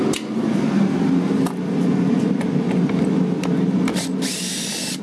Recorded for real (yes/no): yes